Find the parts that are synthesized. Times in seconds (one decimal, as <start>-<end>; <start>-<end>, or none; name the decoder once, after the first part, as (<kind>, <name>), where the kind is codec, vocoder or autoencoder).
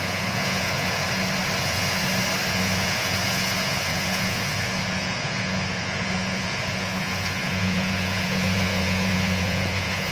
0.0-1.0 (vocoder, Vocos); 1.6-2.0; 2.5-10.1